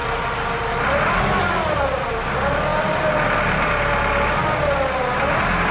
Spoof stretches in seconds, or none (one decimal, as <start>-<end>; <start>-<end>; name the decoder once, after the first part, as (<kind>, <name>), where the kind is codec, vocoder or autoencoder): 0.0-1.8 (vocoder, BigVGAN v2); 2.7-3.7